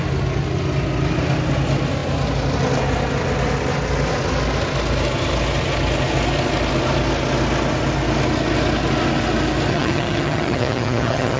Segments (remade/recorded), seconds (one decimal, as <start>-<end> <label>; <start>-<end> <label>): 0.0-9.7 recorded; 9.7-11.4 remade